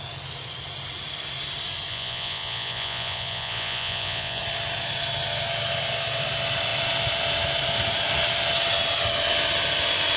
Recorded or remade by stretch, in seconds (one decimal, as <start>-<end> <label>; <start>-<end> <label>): 0.0-1.9 recorded; 1.9-4.4 remade; 4.4-10.2 recorded